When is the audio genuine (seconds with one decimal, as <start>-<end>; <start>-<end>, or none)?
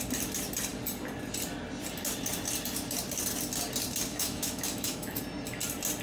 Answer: 0.0-4.1; 5.2-6.0